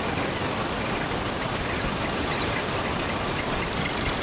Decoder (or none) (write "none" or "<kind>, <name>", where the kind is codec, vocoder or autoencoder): none